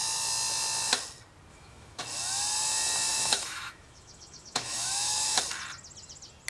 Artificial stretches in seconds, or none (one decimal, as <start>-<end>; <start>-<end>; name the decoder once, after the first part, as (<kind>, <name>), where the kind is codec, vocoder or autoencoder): 1.5-2.0 (autoencoder, DAC-VAE); 3.1-5.4